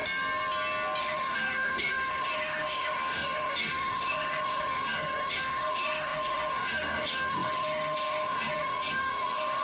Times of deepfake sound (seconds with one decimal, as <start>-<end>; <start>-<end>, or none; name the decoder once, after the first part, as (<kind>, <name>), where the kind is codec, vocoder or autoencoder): 1.0-9.6 (autoencoder, DAC-VAE)